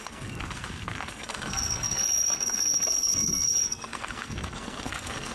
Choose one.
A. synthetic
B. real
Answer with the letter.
A